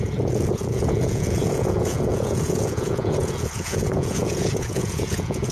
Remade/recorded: remade